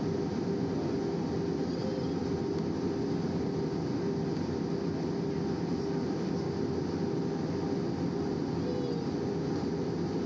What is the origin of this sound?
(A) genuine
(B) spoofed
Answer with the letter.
A